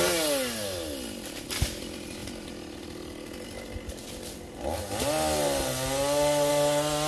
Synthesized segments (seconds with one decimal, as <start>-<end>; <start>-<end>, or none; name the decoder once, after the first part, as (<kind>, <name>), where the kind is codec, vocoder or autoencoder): none